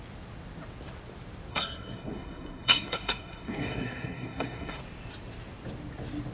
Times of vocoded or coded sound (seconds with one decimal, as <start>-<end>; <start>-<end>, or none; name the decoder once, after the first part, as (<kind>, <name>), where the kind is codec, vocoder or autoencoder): 1.5-4.8 (codec, SNAC)

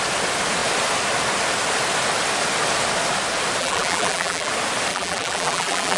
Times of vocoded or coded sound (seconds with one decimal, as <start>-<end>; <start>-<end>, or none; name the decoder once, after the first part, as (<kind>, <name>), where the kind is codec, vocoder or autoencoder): 3.6-4.5 (vocoder, BigVGAN v2); 4.9-6.0

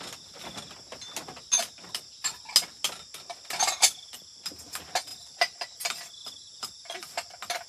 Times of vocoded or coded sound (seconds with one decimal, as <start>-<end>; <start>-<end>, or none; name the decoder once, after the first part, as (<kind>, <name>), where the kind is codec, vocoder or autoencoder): 5.1-7.3 (vocoder, BigVGAN v2)

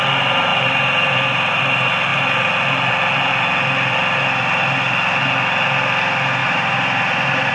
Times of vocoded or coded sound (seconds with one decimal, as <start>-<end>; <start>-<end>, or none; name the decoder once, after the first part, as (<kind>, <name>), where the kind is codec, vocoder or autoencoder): 0.5-1.6 (vocoder, BigVGAN v2); 6.4-7.5

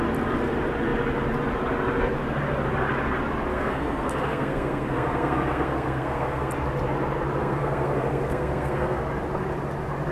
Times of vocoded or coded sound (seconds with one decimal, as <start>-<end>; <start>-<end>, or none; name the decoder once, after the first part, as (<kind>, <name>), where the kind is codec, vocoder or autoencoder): 3.5-6.5 (codec, SNAC); 7.4-9.0

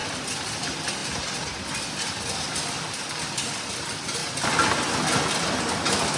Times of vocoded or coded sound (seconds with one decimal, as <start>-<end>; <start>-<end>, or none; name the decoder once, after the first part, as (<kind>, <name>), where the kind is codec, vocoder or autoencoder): none